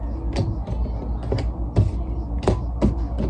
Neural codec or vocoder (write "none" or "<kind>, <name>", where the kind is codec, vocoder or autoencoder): none